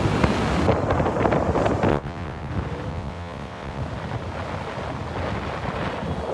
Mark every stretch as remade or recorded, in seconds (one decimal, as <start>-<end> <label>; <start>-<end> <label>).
0.0-1.9 recorded; 1.9-2.5 remade; 2.5-2.9 recorded; 2.9-3.8 remade; 3.8-6.3 recorded